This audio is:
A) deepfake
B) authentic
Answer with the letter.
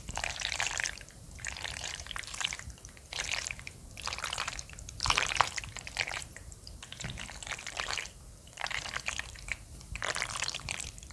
A